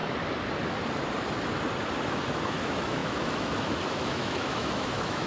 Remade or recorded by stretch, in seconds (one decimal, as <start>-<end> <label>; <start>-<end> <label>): 0.0-2.1 recorded; 2.1-5.3 remade